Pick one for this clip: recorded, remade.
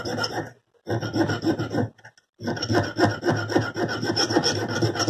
recorded